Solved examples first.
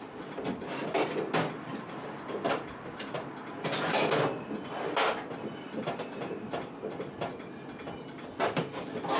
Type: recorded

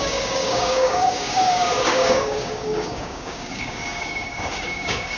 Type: remade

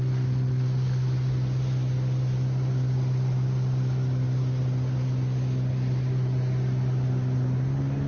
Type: recorded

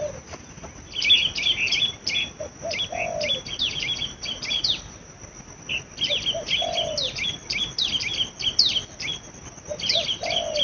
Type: recorded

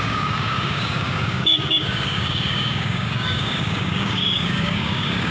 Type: remade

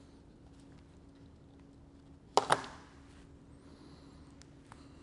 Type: recorded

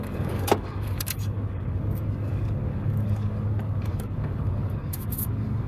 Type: remade